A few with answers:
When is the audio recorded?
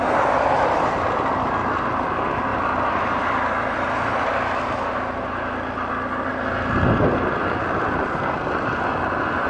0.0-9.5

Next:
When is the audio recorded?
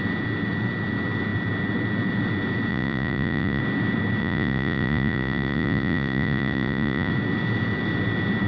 0.0-2.7; 3.6-4.2; 7.1-8.5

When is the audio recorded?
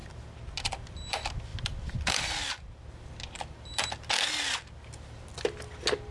0.0-6.1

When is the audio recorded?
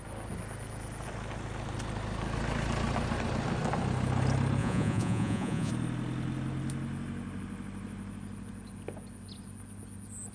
0.0-4.6; 5.7-10.3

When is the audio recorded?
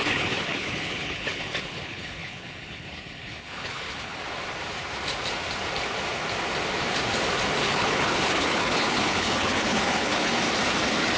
4.2-7.7; 10.3-11.2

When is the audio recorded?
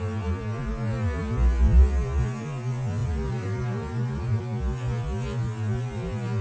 0.0-3.0; 4.4-6.4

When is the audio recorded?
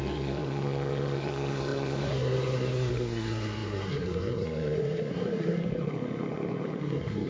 none